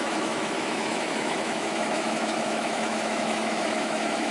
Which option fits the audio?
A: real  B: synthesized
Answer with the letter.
B